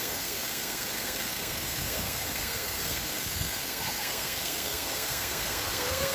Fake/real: fake